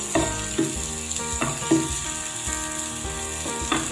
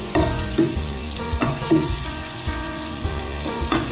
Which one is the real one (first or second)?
first